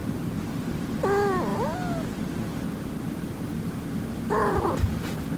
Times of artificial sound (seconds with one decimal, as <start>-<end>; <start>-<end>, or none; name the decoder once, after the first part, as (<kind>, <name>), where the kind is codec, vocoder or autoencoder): 0.0-0.8 (vocoder, BigVGAN v2)